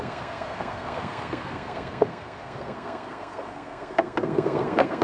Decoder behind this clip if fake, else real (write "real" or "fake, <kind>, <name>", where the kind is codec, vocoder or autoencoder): fake, codec, SNAC